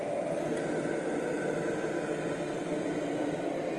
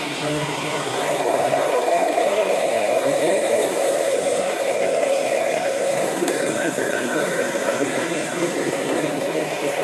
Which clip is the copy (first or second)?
second